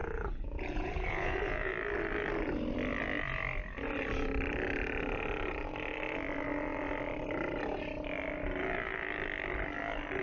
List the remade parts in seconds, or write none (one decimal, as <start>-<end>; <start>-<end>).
0.0-1.7

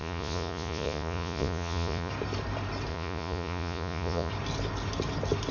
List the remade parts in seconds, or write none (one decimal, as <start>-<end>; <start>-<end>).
0.0-2.1; 2.9-4.3

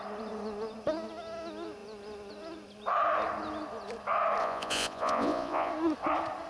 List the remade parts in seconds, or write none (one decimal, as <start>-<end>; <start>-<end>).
4.4-5.7

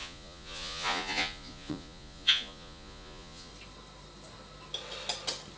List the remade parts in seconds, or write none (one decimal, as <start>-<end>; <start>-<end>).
0.0-3.5

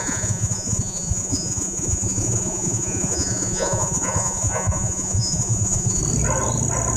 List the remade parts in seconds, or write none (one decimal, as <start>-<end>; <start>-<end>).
0.0-6.0

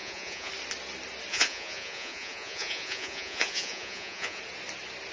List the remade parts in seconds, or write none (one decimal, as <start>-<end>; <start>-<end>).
0.0-0.5; 1.3-4.4

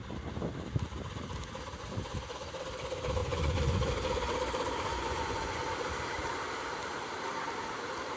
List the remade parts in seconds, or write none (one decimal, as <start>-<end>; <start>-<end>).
3.2-3.9; 4.9-5.6